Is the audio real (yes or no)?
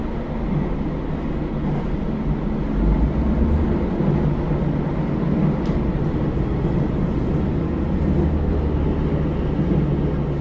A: yes